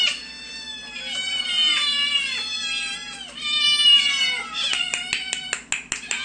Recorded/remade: recorded